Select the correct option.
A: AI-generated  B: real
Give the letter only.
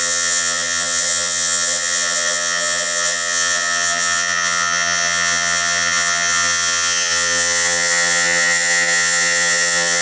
A